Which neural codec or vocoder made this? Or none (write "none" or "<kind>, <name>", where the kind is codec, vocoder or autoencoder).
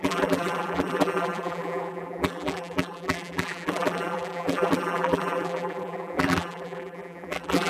vocoder, BigVGAN v2